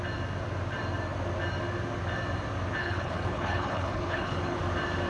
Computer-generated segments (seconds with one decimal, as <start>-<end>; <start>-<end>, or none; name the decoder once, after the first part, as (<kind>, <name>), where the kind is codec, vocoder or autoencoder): 2.8-4.6 (codec, HILCodec)

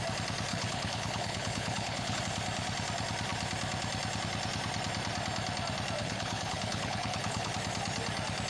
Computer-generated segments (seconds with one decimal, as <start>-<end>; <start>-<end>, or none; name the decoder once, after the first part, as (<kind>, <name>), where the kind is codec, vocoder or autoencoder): 0.5-2.2 (codec, HILCodec); 6.0-7.5

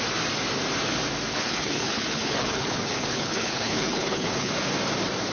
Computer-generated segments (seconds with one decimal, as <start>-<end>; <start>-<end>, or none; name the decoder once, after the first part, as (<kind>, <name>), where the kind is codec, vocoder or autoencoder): 1.3-4.5 (codec, HILCodec)

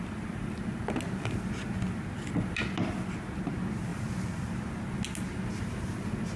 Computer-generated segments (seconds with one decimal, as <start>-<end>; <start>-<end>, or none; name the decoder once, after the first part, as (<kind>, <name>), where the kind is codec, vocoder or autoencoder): none

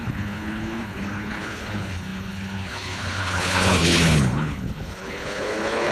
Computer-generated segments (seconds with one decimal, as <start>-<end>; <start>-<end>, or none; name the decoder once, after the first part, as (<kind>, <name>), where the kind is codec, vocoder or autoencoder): 0.0-5.9 (codec, HILCodec)

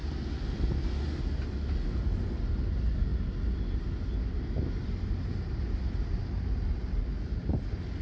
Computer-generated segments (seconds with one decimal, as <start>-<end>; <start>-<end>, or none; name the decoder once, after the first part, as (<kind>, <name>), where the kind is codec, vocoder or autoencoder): none

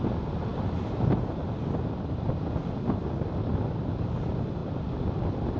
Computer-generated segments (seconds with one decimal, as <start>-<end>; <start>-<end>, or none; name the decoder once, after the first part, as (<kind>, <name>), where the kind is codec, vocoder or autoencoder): none

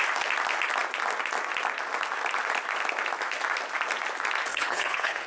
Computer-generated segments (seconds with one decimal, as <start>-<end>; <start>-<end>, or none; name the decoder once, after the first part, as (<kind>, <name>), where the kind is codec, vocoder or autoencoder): 4.5-5.3 (codec, HILCodec)